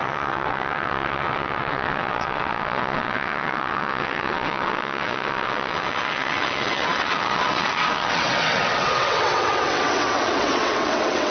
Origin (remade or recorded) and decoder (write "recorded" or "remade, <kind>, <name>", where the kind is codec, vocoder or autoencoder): remade, vocoder, WaveNeXt